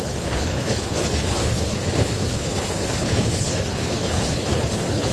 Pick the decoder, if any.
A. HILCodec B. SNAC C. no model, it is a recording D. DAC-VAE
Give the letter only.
A